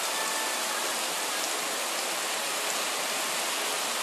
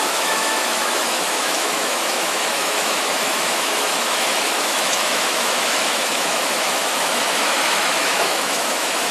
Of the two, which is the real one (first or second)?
first